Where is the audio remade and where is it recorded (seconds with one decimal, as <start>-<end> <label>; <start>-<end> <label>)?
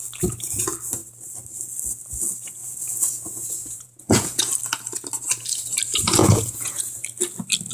0.0-2.6 recorded; 2.6-4.5 remade; 4.5-6.2 recorded; 6.2-6.8 remade; 6.8-7.7 recorded